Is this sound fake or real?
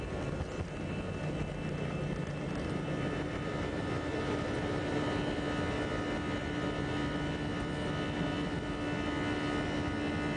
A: real